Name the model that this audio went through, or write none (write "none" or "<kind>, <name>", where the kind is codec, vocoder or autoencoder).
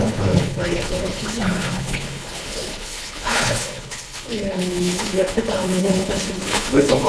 codec, HILCodec